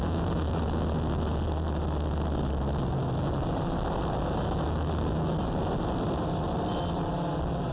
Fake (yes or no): no